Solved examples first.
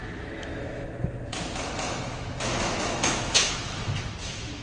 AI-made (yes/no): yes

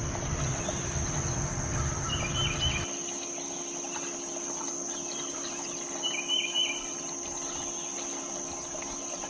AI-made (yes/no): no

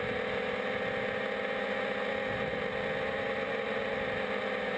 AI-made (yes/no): no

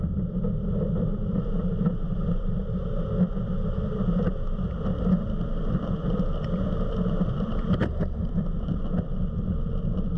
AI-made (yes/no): yes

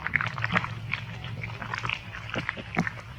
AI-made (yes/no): yes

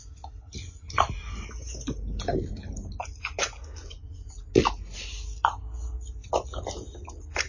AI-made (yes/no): no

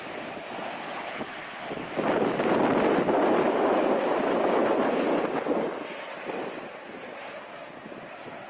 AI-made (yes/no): no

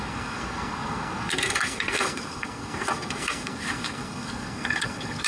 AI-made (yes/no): yes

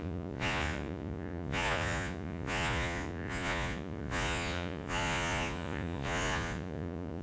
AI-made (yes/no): yes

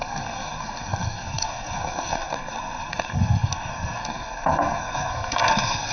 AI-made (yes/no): yes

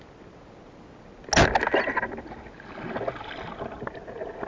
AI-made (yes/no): no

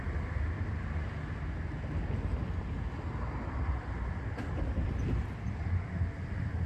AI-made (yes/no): no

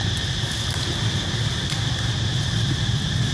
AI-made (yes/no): no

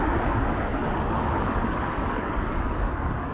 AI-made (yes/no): yes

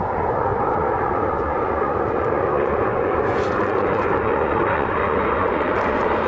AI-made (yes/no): yes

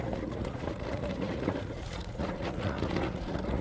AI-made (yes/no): yes